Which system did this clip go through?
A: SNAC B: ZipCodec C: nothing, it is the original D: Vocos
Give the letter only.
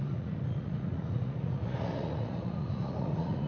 D